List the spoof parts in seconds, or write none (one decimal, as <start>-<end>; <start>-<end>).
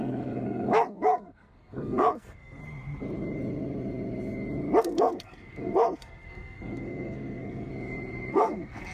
0.0-2.6; 4.8-7.7; 8.3-8.9